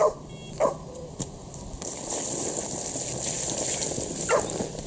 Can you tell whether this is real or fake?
real